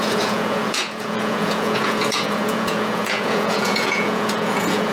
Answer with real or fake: fake